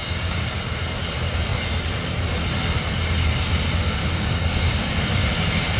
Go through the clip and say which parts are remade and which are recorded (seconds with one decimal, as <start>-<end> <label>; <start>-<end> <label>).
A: 0.0-0.5 remade; 0.5-4.0 recorded; 4.0-5.0 remade; 5.0-5.8 recorded